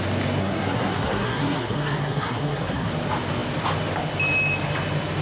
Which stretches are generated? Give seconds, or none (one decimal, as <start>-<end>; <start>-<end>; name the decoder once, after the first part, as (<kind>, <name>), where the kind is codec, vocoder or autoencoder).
0.4-2.9 (codec, SNAC)